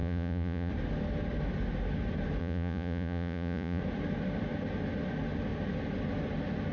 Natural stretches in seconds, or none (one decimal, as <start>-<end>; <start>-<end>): 0.7-2.4; 3.8-6.7